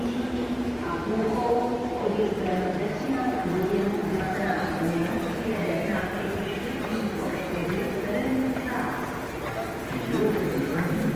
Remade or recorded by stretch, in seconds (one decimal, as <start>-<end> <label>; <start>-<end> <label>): 0.0-11.2 recorded

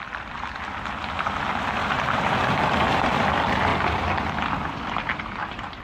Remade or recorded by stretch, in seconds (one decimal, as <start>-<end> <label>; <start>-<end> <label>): 0.0-3.7 remade; 3.7-5.2 recorded; 5.2-5.8 remade

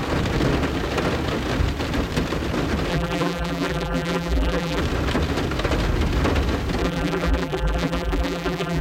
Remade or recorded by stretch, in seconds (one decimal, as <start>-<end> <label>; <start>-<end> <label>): 0.0-2.9 recorded; 2.9-4.8 remade; 4.8-6.8 recorded; 6.8-8.8 remade

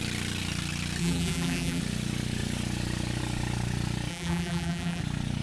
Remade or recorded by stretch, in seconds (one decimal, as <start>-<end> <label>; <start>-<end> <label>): 0.0-1.0 recorded; 1.0-1.8 remade; 1.8-4.1 recorded; 4.1-5.0 remade; 5.0-5.4 recorded

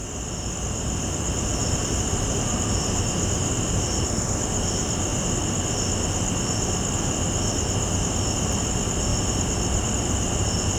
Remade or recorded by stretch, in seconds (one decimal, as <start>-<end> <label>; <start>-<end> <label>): 0.0-5.1 remade; 5.1-6.9 recorded; 6.9-9.1 remade; 9.1-9.9 recorded; 9.9-10.8 remade

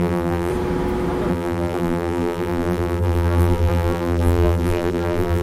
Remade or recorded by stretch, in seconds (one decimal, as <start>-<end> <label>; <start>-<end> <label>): 0.0-0.5 remade; 0.5-1.3 recorded; 1.3-5.4 remade

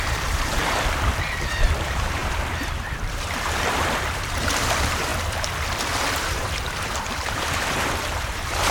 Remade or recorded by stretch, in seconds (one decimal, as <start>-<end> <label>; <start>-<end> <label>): 0.0-5.1 remade; 5.1-6.1 recorded; 6.1-8.7 remade